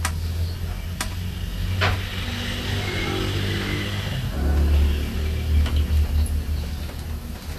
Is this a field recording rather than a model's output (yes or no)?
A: yes